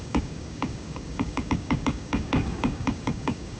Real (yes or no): no